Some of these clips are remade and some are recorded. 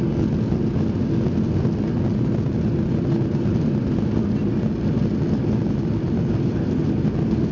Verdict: recorded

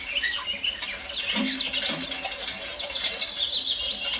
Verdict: recorded